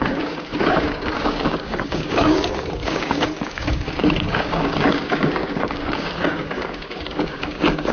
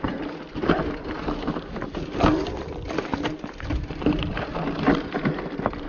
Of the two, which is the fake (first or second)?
first